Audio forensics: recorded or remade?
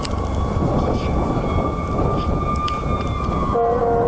recorded